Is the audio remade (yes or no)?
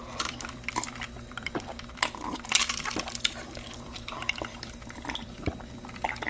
yes